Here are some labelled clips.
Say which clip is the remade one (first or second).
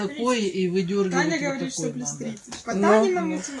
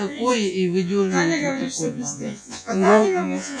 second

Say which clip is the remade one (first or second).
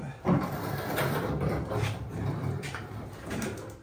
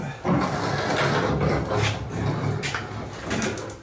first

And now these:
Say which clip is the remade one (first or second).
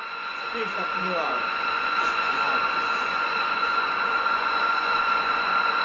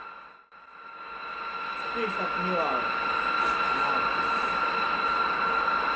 first